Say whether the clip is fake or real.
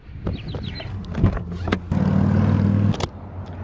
real